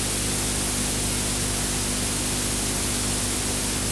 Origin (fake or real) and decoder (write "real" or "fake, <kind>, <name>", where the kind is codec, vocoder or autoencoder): real